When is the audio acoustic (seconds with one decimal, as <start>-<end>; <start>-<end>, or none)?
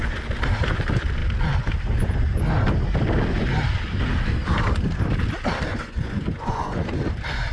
0.0-5.7; 6.8-7.5